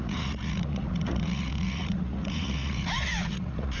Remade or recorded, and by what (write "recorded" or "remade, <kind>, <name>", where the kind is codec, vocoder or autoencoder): remade, vocoder, Vocos